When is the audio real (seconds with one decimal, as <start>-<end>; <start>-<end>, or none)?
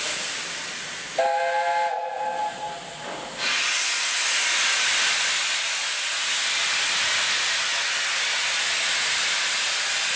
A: 0.0-10.2